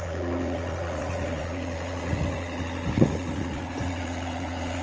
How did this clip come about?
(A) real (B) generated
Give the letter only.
B